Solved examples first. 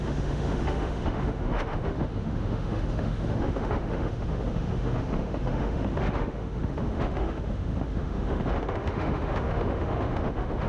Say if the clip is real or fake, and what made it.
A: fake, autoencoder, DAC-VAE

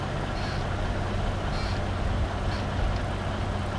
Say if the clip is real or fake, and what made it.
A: real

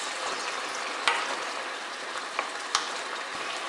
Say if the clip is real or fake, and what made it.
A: real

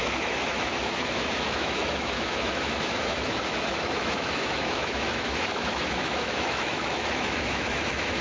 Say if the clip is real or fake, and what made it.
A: fake, autoencoder, DAC-VAE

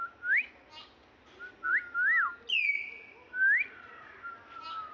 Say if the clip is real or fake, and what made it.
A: real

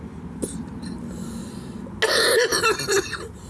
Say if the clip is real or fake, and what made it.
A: real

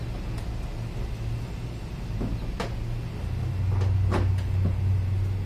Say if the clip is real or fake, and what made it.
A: real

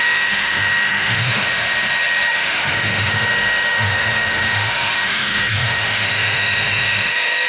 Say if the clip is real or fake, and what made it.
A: fake, autoencoder, DAC-VAE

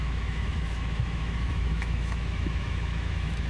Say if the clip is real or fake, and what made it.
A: fake, autoencoder, DAC-VAE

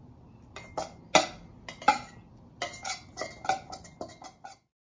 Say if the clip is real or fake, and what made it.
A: real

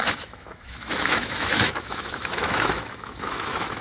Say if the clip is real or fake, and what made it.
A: fake, autoencoder, DAC-VAE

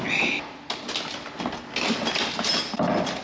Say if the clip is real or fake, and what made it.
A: real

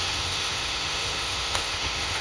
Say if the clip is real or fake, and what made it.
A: fake, autoencoder, DAC-VAE